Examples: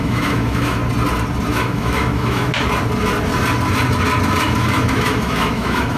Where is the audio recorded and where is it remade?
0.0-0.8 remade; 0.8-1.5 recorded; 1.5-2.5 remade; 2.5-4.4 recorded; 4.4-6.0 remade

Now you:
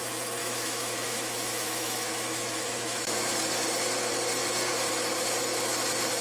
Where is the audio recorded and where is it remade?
0.0-0.4 recorded; 0.4-3.3 remade; 3.3-6.2 recorded

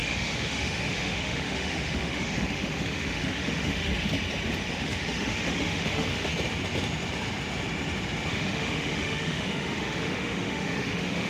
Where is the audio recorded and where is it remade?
0.0-3.9 remade; 3.9-4.7 recorded; 4.7-6.3 remade; 6.3-8.3 recorded; 8.3-11.3 remade